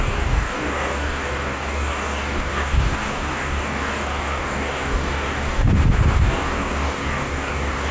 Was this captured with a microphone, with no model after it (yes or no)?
no